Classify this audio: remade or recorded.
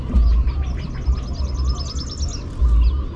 recorded